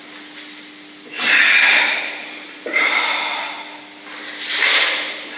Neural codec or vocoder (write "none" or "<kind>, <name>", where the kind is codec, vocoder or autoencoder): none